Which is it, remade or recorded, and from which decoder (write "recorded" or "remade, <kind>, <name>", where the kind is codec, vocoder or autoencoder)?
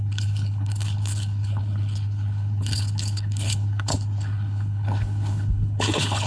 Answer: remade, codec, HILCodec